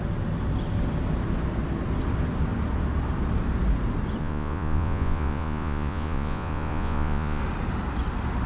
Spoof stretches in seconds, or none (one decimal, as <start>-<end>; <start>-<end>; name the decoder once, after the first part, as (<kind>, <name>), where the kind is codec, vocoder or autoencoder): 4.2-7.4 (vocoder, Vocos)